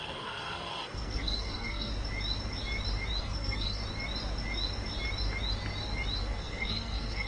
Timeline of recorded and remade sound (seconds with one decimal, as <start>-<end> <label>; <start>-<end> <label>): 0.0-1.9 remade; 1.9-3.2 recorded; 3.2-3.8 remade; 3.8-6.2 recorded; 6.2-7.3 remade